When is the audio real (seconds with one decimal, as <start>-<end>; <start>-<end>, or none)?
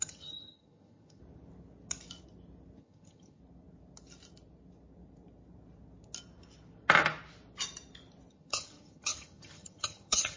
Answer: 1.2-2.8; 3.4-8.3